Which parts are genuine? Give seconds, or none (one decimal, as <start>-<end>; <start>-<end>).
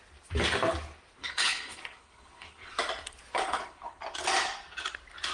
0.0-1.2; 2.7-3.3; 4.0-5.3